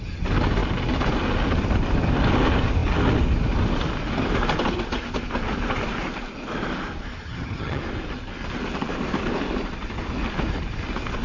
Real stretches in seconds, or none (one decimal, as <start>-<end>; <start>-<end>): 0.0-7.2; 7.8-11.2